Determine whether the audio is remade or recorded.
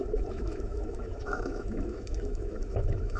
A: remade